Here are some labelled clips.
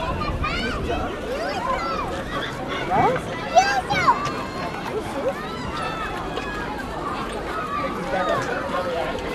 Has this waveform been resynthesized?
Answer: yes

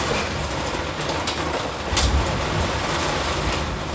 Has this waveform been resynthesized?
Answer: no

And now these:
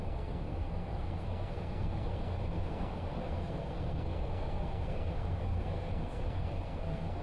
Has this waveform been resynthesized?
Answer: yes